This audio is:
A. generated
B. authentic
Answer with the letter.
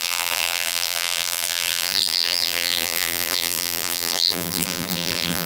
A